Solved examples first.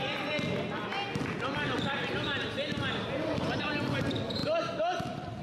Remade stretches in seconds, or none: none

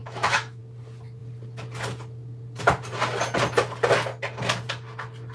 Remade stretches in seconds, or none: 0.0-0.6 (autoencoder, DAC-VAE)

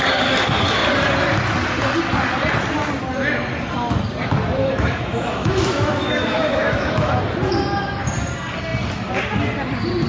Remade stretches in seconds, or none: 4.6-7.2 (autoencoder, DAC-VAE)

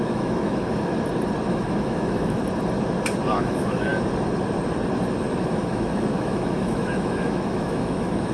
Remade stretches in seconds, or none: 0.0-0.9 (autoencoder, DAC-VAE); 1.5-2.4; 3.3-3.9; 5.4-8.3